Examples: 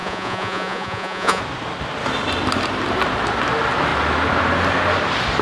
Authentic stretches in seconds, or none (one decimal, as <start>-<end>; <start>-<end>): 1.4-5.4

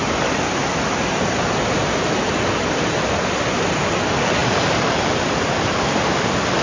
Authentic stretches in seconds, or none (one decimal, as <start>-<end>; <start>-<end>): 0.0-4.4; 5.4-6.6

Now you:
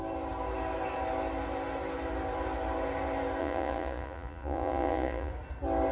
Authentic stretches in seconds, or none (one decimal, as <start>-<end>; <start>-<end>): 0.0-3.4; 5.3-5.9

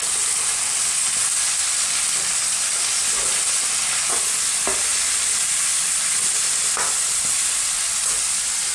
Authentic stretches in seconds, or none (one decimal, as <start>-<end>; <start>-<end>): 0.0-8.7

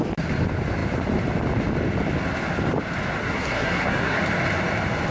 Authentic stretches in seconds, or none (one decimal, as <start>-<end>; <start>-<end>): 0.0-3.2; 4.2-5.1

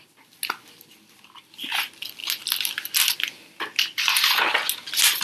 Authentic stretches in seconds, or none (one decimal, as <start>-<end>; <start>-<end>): 0.0-5.2

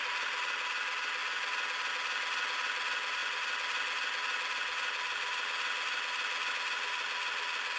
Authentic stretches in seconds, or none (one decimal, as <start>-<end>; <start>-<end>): 0.0-7.8